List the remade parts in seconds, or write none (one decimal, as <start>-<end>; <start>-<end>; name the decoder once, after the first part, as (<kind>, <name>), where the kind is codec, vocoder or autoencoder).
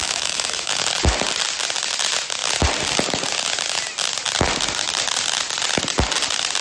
0.0-0.8 (autoencoder, DAC-VAE)